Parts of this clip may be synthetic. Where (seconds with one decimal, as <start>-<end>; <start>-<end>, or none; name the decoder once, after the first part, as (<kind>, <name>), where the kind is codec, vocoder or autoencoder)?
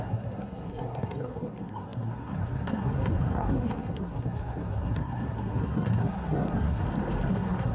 0.0-6.8 (codec, SNAC); 7.3-7.7